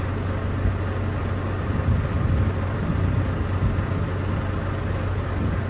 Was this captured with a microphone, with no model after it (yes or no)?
yes